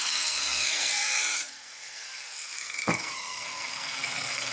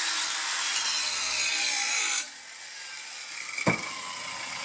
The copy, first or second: first